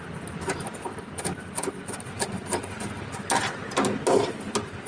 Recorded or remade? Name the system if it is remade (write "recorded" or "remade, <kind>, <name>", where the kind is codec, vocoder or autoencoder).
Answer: recorded